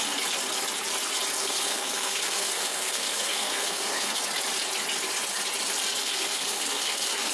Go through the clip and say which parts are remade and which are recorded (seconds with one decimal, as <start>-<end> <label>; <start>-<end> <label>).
0.0-1.4 recorded; 1.4-4.2 remade; 4.2-6.0 recorded; 6.0-7.3 remade